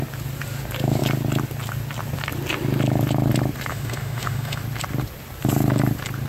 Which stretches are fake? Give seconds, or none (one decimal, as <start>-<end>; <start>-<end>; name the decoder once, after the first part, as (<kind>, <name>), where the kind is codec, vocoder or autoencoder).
3.7-4.6 (autoencoder, DAC-VAE)